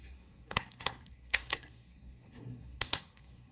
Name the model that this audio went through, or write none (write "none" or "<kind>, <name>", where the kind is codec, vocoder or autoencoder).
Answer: codec, SNAC